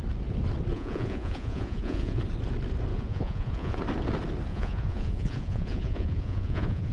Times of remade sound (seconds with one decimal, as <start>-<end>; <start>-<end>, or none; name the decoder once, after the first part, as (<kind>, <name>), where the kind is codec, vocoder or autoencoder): 0.7-2.2 (vocoder, Vocos); 2.9-3.8; 4.5-6.9